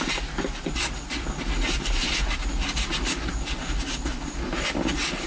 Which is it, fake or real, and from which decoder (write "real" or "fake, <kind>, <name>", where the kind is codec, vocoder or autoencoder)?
real